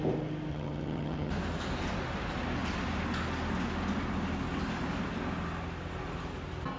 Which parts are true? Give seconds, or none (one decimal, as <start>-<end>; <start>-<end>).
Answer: 0.0-0.5; 1.3-6.8